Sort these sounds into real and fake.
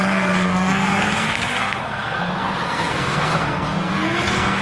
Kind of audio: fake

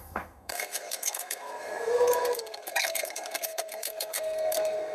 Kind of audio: fake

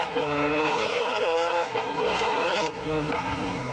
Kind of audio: fake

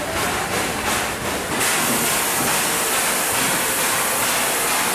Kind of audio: real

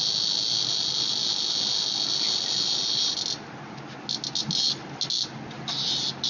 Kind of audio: real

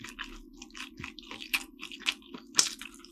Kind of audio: real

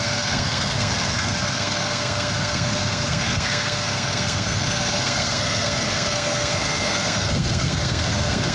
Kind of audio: fake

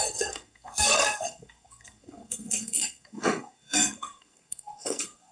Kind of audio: fake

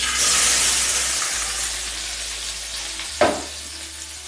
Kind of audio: real